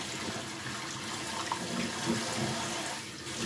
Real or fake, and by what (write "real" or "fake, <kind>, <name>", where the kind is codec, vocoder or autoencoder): real